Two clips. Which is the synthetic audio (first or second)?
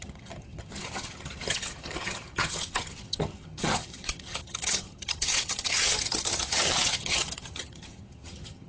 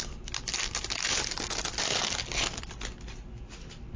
first